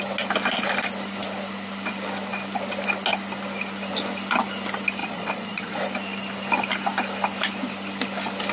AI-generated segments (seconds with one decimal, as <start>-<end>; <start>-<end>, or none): 5.0-5.8